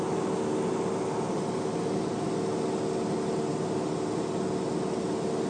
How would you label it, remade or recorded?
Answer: recorded